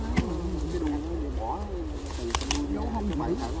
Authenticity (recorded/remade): recorded